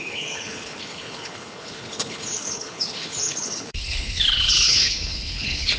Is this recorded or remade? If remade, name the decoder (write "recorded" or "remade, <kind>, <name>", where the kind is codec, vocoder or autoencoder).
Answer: remade, codec, HILCodec